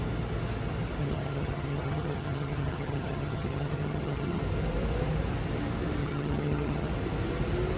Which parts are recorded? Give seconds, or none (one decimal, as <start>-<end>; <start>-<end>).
0.0-1.0; 4.4-6.0; 6.9-7.8